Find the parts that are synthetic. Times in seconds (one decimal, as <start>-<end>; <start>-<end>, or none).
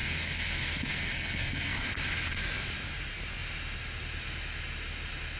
0.0-1.9